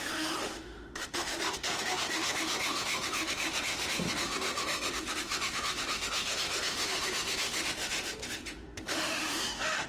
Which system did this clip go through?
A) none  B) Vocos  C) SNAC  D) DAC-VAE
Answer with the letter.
D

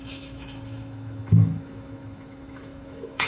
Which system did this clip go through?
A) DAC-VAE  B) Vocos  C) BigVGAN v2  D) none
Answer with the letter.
A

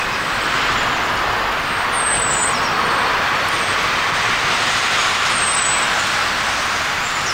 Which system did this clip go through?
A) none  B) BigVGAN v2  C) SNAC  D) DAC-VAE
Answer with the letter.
A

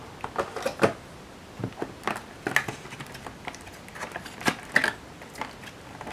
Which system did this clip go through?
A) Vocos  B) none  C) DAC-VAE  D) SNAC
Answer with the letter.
B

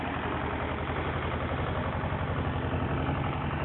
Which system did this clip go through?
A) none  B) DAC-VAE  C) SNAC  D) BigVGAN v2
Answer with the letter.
A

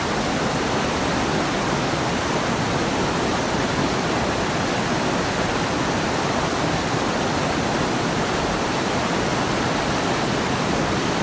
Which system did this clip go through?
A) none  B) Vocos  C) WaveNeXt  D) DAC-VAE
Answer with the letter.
A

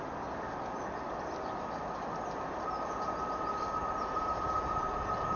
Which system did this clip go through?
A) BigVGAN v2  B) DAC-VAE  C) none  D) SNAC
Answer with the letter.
C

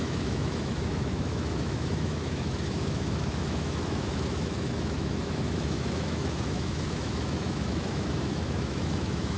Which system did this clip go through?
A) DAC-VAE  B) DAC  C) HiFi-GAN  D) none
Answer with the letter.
A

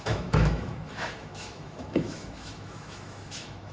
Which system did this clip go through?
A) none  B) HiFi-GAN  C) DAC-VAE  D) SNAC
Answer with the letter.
C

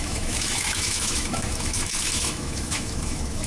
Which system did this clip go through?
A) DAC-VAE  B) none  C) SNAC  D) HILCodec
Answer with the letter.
A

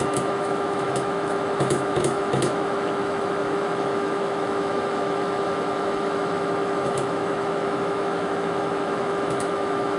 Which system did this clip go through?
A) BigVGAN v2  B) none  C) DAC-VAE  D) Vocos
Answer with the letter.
C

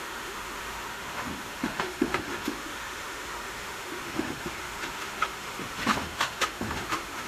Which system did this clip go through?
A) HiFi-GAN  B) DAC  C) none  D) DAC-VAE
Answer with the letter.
D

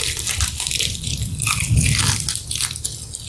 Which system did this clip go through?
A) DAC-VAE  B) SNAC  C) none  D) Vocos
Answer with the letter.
C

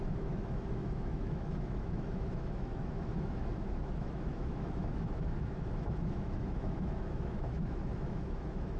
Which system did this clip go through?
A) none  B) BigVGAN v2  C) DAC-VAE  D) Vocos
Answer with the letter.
C